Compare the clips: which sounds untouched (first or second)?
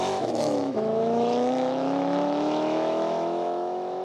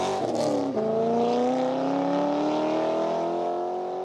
second